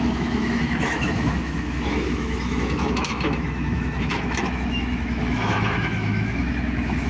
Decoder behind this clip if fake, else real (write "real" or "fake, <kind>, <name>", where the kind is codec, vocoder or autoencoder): fake, autoencoder, DAC-VAE